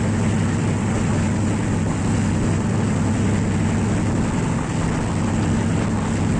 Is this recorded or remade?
recorded